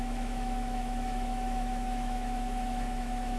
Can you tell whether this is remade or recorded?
remade